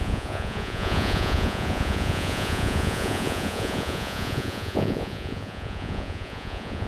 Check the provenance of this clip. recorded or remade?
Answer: remade